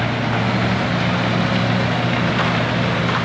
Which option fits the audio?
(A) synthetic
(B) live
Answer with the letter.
B